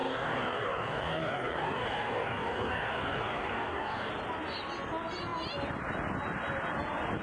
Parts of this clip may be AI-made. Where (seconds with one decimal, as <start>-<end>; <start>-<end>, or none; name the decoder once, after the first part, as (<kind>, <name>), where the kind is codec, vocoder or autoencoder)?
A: 0.0-4.1 (codec, DAC)